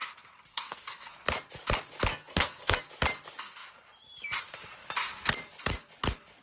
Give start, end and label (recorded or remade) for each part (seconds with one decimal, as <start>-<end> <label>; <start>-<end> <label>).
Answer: 0.0-0.5 recorded; 0.5-1.1 remade; 1.1-2.1 recorded; 2.1-2.8 remade; 2.8-6.4 recorded